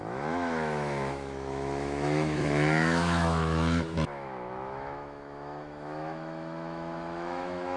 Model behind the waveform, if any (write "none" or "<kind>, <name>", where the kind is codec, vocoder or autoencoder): autoencoder, DAC-VAE